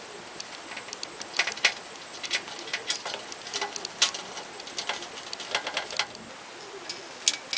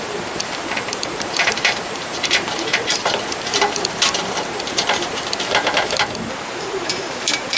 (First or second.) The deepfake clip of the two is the second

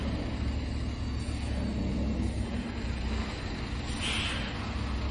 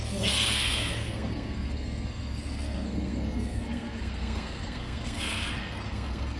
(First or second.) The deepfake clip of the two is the second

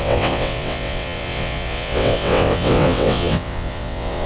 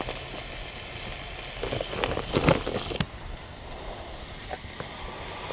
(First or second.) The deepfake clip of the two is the first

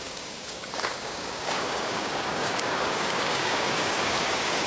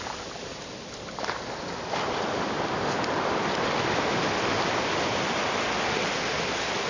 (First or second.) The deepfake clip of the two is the first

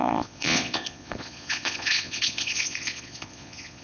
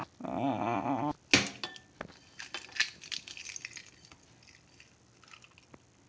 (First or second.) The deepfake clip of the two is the first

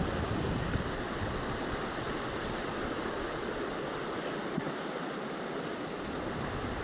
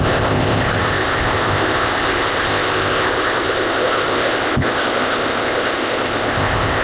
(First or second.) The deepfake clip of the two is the second